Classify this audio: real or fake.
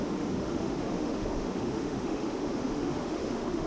fake